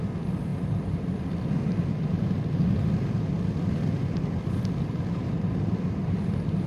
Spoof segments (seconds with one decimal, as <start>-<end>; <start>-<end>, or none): none